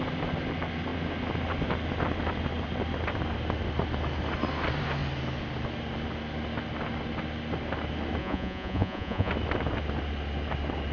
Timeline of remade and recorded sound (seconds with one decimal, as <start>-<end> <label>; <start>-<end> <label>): 0.0-8.2 recorded; 8.2-9.3 remade; 9.3-10.9 recorded